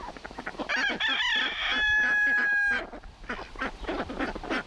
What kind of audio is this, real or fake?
real